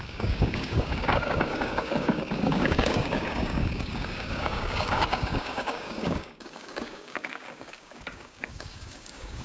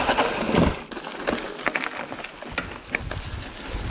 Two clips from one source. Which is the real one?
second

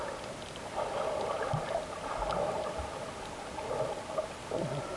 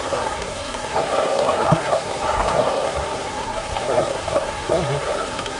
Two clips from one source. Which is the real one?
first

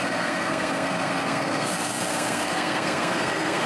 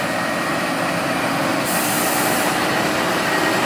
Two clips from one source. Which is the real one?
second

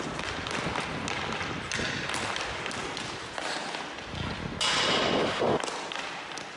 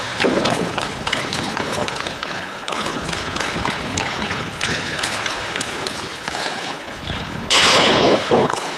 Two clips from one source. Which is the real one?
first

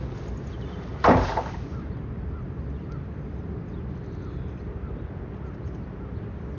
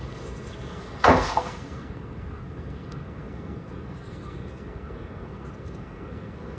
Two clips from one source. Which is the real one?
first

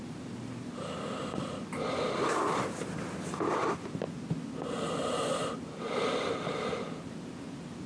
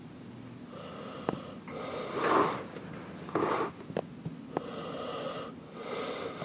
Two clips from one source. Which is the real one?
second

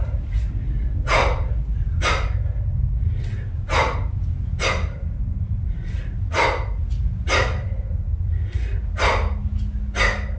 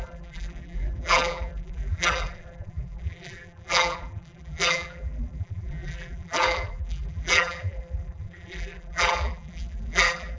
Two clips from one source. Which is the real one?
first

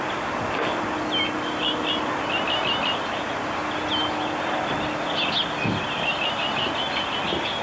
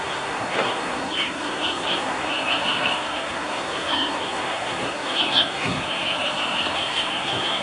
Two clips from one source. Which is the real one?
first